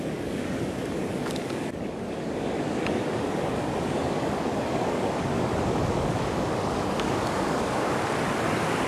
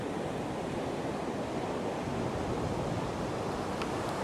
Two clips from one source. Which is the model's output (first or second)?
first